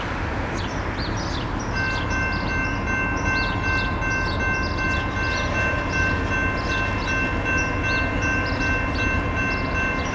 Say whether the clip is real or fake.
real